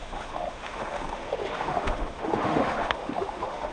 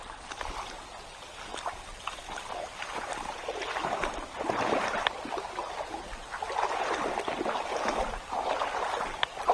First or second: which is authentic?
second